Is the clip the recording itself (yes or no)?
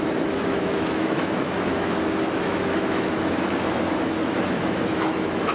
no